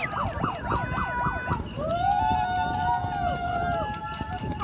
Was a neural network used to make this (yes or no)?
no